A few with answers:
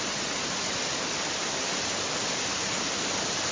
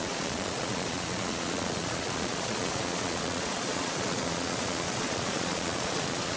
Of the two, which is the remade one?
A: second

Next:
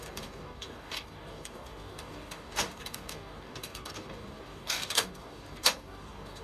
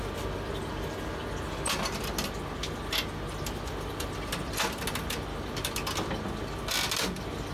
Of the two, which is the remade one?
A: first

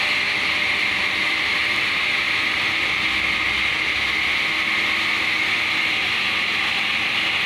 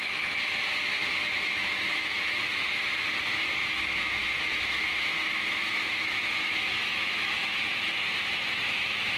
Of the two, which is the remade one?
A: second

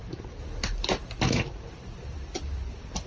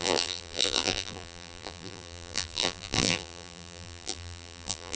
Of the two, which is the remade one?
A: second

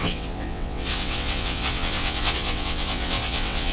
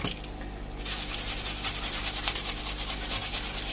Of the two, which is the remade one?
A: first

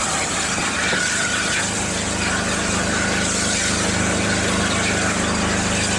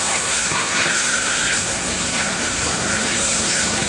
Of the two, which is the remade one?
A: second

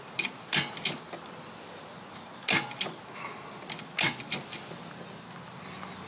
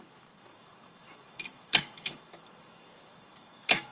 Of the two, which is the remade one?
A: second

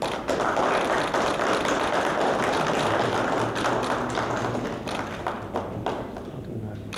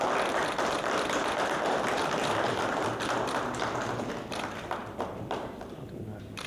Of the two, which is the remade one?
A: second